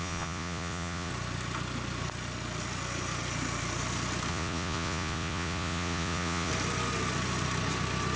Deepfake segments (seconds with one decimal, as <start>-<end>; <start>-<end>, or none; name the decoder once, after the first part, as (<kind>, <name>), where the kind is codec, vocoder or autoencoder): 0.0-1.1 (vocoder, Vocos); 4.3-6.5